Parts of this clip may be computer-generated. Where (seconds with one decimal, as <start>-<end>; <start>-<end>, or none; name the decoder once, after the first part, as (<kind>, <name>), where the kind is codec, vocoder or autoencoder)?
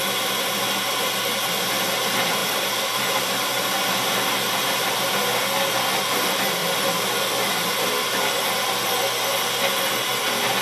2.4-5.1 (vocoder, BigVGAN v2); 6.6-8.3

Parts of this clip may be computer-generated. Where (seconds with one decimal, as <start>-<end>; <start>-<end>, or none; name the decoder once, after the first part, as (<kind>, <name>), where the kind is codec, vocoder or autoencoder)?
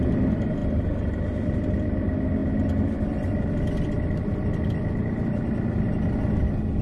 none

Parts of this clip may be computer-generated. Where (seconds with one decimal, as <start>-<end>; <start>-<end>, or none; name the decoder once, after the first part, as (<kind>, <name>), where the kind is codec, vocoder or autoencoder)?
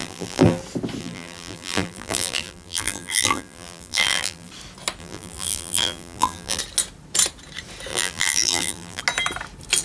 0.0-0.6 (vocoder, BigVGAN v2); 1.0-4.5; 5.0-6.6; 7.9-9.0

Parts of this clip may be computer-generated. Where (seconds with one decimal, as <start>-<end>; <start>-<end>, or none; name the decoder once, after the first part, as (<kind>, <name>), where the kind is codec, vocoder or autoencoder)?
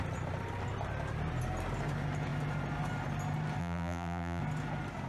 3.6-4.4 (vocoder, BigVGAN v2)